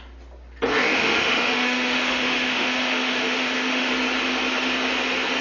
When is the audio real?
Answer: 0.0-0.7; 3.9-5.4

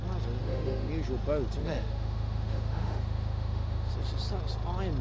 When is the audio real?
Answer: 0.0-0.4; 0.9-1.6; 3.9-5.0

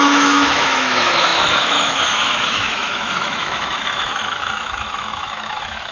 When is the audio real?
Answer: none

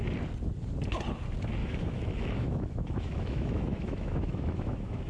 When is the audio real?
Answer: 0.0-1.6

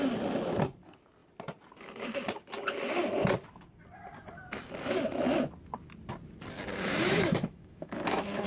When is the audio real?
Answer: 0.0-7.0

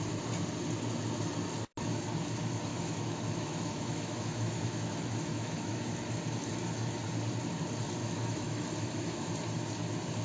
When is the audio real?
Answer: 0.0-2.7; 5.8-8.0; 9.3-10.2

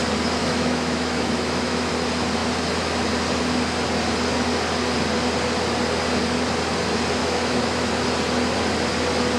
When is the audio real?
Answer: 0.0-0.4; 1.9-7.2; 7.9-9.4

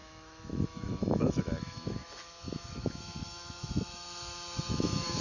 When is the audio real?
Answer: none